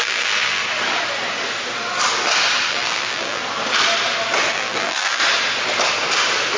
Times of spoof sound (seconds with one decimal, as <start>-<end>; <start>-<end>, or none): 0.0-0.6; 2.7-3.4; 4.5-5.2